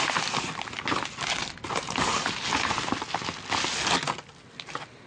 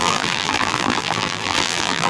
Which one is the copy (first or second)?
second